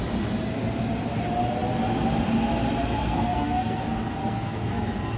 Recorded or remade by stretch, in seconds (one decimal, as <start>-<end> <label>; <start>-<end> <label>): 0.0-3.0 recorded; 3.0-3.8 remade; 3.8-4.2 recorded; 4.2-4.8 remade; 4.8-5.2 recorded